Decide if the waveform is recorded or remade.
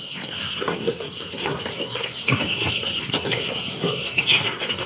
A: remade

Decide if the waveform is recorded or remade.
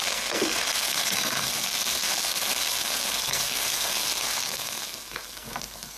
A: remade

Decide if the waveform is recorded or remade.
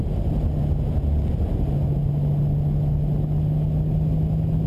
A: recorded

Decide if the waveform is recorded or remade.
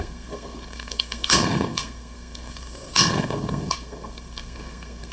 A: remade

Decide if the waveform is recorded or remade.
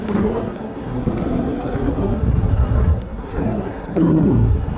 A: remade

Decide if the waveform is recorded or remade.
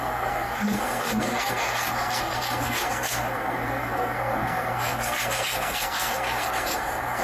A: remade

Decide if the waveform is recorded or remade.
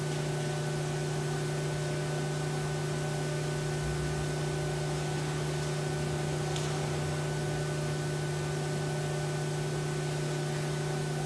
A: recorded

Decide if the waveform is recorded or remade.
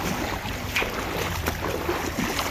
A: recorded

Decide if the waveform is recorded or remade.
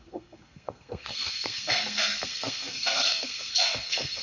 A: remade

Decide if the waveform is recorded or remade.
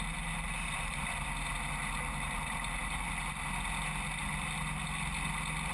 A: recorded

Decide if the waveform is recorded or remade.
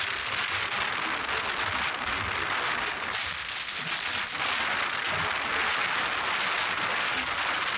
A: recorded